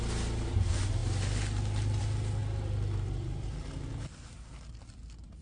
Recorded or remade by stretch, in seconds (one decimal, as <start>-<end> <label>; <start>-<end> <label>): 0.0-5.4 recorded